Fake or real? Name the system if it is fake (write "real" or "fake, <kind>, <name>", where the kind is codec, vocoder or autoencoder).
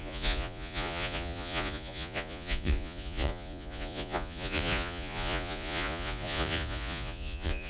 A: fake, vocoder, Vocos